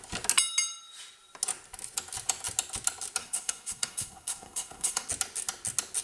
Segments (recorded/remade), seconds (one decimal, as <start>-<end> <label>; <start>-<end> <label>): 0.0-3.2 recorded; 3.2-5.1 remade; 5.1-6.0 recorded